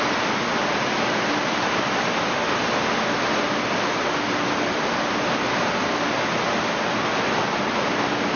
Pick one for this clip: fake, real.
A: real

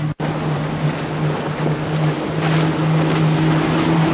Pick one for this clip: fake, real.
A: real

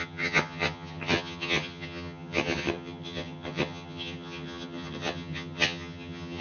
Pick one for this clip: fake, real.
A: fake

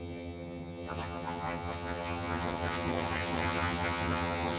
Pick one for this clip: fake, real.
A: fake